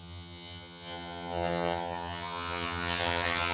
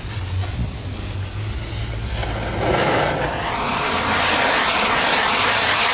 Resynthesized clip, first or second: first